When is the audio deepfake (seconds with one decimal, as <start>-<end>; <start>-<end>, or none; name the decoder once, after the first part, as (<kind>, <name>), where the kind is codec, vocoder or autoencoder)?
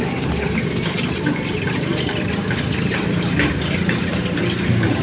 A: none